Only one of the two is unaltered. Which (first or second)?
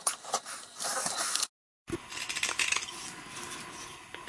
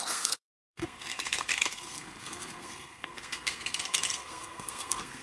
first